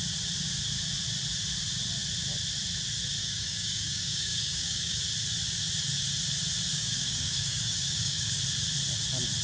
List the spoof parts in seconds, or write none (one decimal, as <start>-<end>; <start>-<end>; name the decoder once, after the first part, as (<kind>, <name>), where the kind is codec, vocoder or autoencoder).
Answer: 3.2-5.0 (codec, DAC); 6.7-8.4